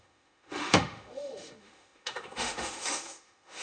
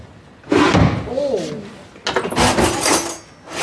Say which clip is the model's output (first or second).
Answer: first